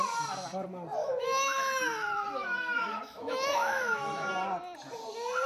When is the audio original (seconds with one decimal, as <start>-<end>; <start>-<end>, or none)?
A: 0.0-1.0; 4.3-5.5